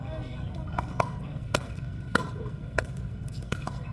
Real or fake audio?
fake